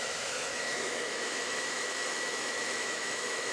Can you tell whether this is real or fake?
fake